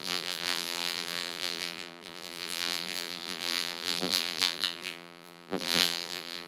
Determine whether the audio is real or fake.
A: fake